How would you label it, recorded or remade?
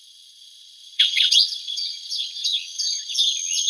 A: remade